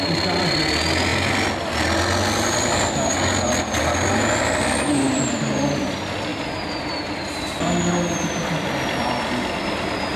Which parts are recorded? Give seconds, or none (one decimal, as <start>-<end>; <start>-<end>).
0.0-10.2